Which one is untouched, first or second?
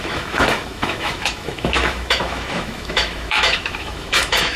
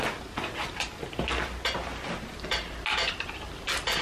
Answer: second